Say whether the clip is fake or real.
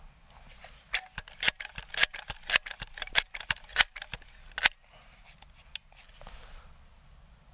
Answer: real